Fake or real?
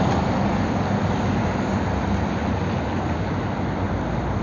real